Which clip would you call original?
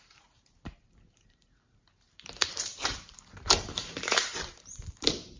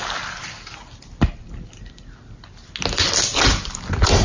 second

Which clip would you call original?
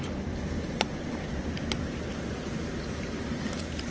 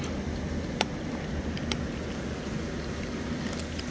second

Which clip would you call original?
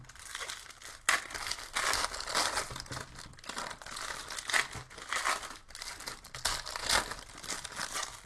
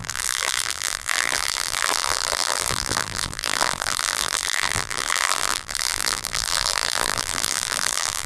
first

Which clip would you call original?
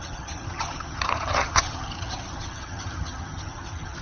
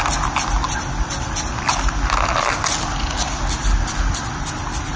second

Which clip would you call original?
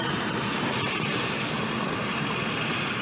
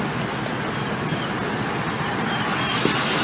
second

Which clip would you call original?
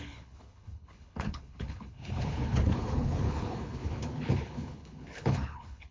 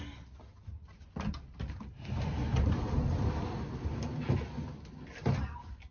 second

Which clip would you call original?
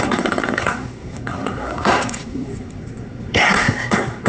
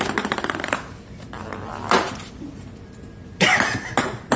second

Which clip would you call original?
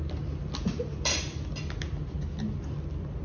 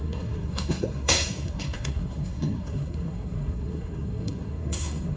first